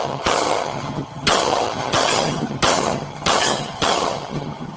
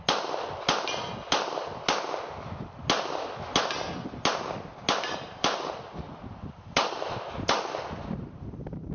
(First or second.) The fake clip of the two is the first